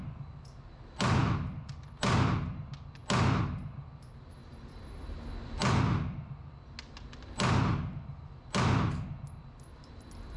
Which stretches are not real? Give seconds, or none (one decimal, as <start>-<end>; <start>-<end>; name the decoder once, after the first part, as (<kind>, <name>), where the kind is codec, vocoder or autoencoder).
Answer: none